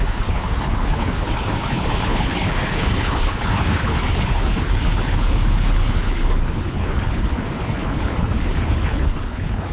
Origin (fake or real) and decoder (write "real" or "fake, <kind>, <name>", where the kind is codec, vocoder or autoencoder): fake, codec, HILCodec